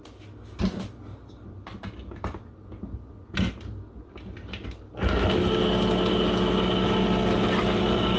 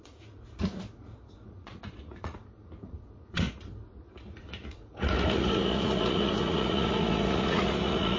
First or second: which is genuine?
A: first